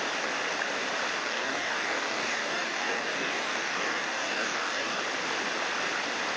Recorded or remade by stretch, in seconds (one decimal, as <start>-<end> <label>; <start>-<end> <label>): 0.0-1.2 recorded; 1.2-5.0 remade; 5.0-6.4 recorded